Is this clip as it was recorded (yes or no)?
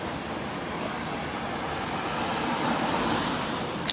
no